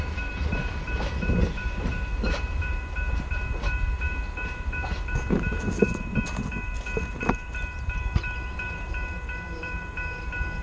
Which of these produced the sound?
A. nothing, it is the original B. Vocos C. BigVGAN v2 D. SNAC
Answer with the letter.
C